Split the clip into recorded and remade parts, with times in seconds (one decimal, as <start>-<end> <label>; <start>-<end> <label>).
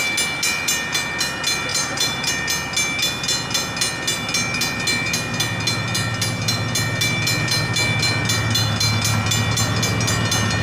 0.0-1.7 recorded; 1.7-2.3 remade; 2.3-10.6 recorded